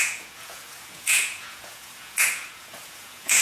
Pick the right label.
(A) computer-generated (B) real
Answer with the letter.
A